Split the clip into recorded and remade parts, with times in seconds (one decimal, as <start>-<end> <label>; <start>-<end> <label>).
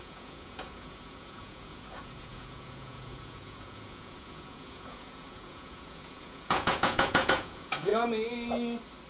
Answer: 0.0-7.9 remade; 7.9-9.1 recorded